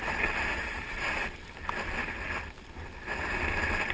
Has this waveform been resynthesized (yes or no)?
no